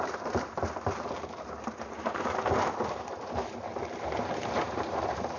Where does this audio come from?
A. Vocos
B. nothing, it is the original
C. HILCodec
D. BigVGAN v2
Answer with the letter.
D